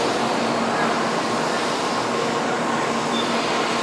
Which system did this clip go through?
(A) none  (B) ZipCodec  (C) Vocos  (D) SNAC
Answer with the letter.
A